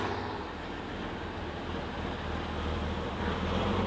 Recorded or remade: remade